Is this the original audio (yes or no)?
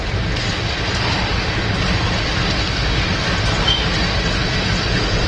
yes